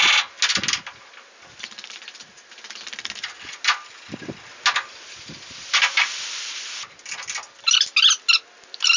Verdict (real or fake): real